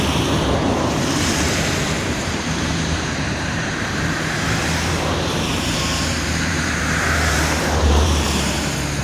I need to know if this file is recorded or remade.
remade